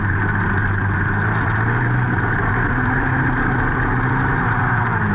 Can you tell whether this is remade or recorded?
recorded